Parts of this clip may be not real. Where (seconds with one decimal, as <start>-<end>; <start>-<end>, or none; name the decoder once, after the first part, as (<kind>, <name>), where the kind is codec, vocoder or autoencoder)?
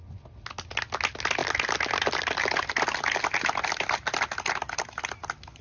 none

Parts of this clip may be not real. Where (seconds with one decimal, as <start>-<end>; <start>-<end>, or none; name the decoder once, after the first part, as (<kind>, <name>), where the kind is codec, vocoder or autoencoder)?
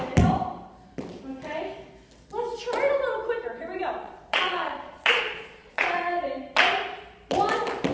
4.0-6.2 (vocoder, Vocos)